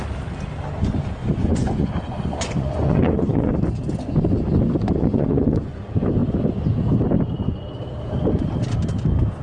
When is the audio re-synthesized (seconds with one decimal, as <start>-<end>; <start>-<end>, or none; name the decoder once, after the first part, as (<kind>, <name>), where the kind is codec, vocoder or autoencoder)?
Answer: 1.2-3.5 (vocoder, Vocos); 5.0-5.8